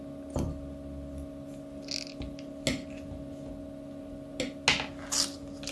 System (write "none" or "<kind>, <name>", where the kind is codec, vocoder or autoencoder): none